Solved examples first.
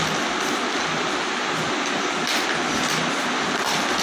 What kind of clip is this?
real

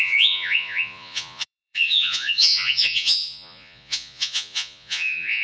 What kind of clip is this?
fake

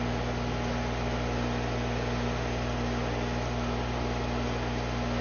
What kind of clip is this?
real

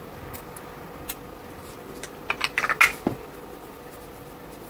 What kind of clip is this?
real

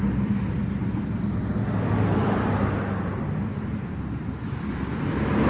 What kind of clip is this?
fake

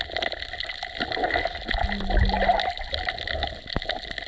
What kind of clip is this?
real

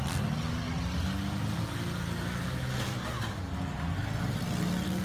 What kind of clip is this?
real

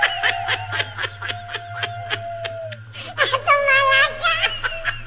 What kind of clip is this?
real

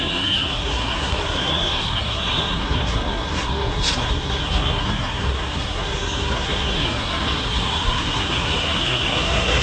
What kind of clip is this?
fake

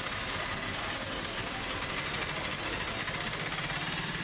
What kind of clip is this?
real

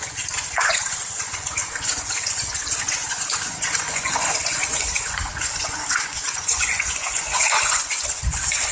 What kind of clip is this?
fake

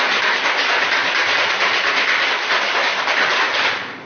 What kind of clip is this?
real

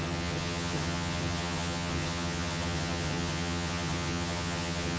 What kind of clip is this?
fake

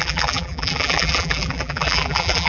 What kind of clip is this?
fake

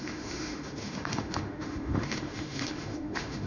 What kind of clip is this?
fake